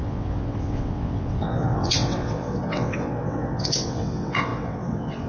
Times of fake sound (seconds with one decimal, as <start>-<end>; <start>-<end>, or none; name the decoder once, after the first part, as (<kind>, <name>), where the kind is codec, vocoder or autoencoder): 0.0-5.3 (vocoder, WaveNeXt)